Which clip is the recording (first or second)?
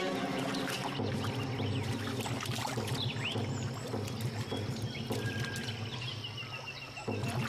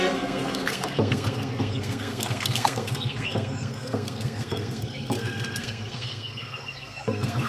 first